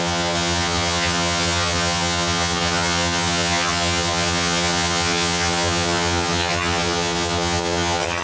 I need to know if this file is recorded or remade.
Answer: remade